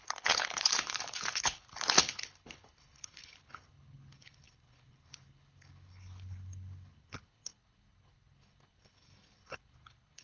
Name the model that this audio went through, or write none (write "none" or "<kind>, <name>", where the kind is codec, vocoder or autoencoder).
codec, HILCodec